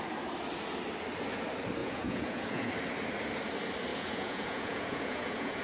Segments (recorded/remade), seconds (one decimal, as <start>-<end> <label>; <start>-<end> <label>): 0.0-1.8 recorded; 1.8-2.7 remade; 2.7-3.9 recorded; 3.9-5.6 remade